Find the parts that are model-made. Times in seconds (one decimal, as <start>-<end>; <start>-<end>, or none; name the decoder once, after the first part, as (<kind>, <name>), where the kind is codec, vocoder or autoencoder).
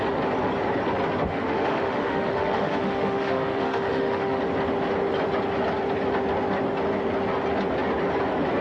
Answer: 1.3-4.4 (autoencoder, DAC-VAE)